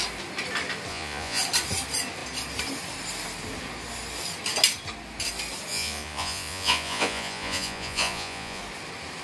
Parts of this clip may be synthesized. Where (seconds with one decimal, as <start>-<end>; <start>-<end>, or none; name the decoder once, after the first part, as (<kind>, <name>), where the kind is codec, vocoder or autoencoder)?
0.9-1.4 (vocoder, Vocos); 5.7-8.6